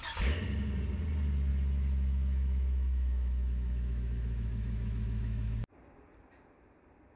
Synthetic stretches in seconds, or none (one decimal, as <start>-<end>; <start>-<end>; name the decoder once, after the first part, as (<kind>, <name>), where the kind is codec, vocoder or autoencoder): 1.5-5.6 (autoencoder, DAC-VAE)